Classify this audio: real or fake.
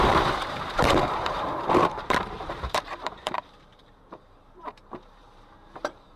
fake